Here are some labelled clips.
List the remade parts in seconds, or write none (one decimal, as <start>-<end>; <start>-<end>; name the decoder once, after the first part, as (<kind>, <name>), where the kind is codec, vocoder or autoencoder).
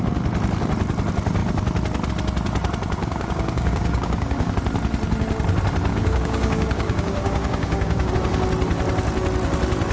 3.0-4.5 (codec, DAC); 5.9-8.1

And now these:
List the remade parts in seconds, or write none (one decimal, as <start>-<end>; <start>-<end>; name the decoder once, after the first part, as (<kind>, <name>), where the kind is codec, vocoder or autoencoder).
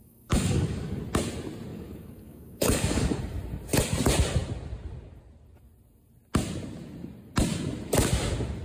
0.0-1.0 (codec, DAC); 1.7-3.2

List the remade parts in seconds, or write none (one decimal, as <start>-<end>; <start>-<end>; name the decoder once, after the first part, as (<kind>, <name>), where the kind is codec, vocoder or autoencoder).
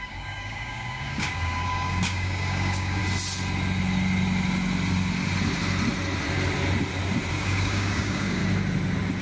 0.0-3.0 (codec, DAC); 7.3-8.4